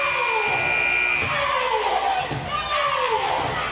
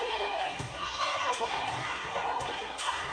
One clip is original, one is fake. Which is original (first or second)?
first